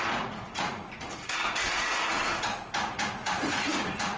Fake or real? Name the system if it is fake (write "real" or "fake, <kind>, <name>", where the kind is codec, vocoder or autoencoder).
fake, vocoder, Vocos